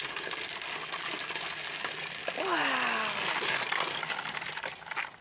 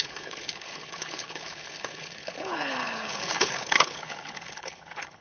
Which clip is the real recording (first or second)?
first